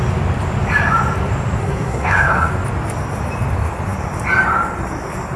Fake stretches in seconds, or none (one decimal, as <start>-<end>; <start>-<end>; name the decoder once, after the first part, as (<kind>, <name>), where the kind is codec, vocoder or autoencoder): 1.6-2.5 (codec, SNAC)